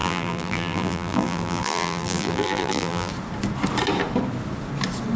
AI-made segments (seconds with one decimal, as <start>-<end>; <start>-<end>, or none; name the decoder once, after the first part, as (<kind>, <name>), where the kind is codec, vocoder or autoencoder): 0.0-3.1 (vocoder, BigVGAN v2)